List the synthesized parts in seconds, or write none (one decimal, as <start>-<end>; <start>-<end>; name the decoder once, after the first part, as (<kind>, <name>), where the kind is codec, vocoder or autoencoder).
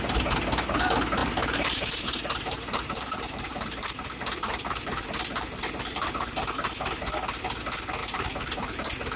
1.2-6.1 (vocoder, BigVGAN v2); 8.0-9.2